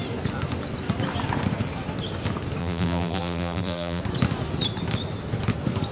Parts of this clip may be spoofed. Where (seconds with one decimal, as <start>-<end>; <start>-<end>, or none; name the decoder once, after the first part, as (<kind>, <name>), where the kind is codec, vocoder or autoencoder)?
2.6-4.0 (vocoder, BigVGAN v2)